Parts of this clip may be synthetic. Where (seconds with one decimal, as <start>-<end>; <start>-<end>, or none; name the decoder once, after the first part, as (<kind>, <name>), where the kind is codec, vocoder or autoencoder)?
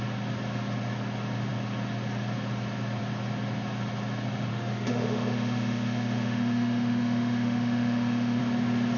4.5-8.4 (autoencoder, DAC-VAE)